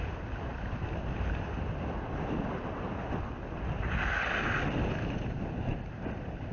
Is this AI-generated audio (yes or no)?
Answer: yes